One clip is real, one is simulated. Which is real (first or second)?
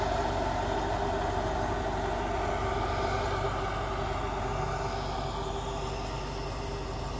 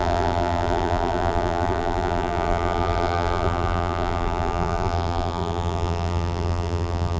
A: first